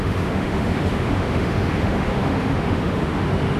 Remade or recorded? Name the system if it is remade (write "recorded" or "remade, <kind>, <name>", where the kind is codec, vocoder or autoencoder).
remade, autoencoder, DAC-VAE